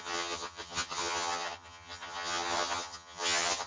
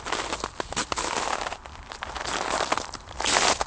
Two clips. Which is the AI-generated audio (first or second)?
first